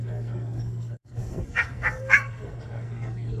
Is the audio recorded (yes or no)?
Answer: no